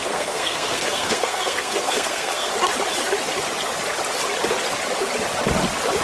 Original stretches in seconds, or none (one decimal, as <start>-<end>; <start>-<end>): 2.5-6.0